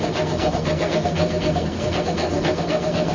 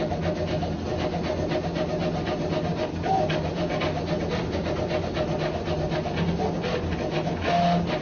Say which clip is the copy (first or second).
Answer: first